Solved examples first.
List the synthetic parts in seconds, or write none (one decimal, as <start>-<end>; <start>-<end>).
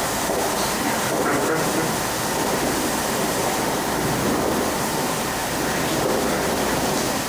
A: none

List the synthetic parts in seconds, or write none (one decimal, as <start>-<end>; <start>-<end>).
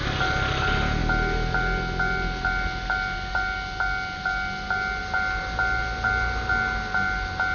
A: none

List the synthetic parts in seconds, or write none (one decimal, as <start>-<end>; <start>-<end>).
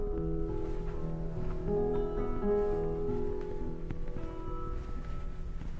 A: none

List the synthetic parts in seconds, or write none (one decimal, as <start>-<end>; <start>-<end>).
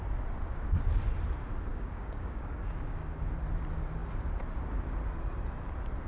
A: 1.7-3.3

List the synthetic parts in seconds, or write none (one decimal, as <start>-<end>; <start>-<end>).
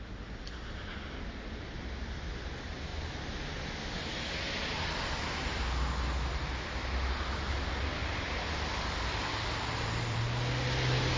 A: 9.1-10.2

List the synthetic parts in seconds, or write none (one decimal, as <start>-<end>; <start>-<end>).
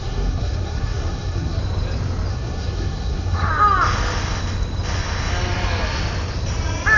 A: 0.0-1.6; 2.3-3.5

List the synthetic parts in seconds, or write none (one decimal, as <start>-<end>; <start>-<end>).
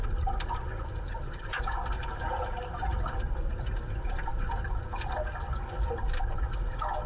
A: 0.0-4.3